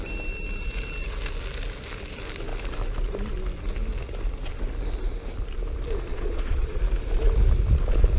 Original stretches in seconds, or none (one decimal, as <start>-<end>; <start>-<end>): 0.0-6.1; 6.8-8.2